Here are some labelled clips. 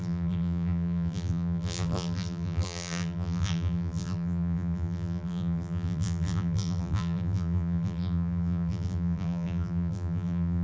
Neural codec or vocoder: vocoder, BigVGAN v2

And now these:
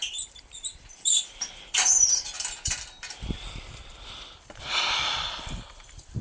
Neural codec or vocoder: vocoder, BigVGAN v2